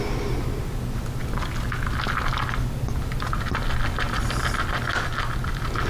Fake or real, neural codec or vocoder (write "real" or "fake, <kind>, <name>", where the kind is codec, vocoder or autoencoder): real